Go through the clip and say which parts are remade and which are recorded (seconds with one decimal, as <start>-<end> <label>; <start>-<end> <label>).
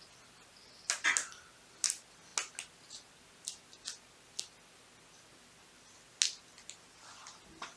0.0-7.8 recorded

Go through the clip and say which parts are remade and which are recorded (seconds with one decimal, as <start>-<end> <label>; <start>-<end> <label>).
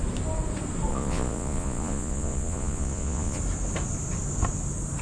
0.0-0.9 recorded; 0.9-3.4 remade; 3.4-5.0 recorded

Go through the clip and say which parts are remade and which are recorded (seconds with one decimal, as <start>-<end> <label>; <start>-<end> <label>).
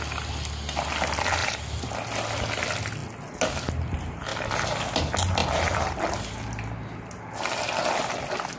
0.0-1.4 recorded; 1.4-2.3 remade; 2.3-5.4 recorded; 5.4-6.2 remade; 6.2-8.6 recorded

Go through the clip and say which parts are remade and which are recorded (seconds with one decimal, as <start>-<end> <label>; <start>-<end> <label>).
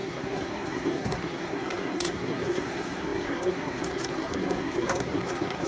0.0-5.7 remade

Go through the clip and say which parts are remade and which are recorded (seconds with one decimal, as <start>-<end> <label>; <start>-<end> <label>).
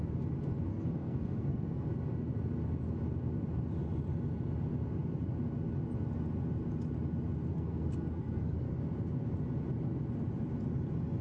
0.0-0.7 recorded; 0.7-1.9 remade; 1.9-7.5 recorded; 7.5-8.8 remade; 8.8-11.2 recorded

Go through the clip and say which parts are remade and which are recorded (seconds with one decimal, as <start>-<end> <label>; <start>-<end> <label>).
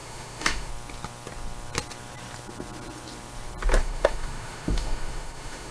0.0-0.7 remade; 0.7-3.8 recorded; 3.8-5.7 remade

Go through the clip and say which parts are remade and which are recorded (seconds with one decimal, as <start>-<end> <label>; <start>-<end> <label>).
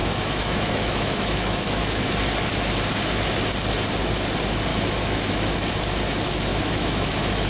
0.0-2.1 remade; 2.1-4.7 recorded; 4.7-5.5 remade; 5.5-6.5 recorded; 6.5-7.5 remade